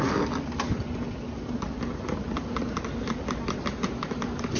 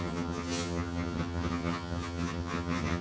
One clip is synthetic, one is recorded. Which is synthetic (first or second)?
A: second